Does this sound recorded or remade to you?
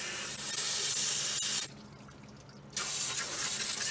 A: recorded